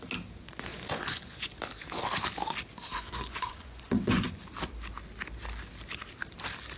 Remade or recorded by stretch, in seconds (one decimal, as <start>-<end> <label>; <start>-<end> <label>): 0.0-0.7 recorded; 0.7-1.5 remade; 1.5-2.9 recorded; 2.9-4.4 remade; 4.4-6.8 recorded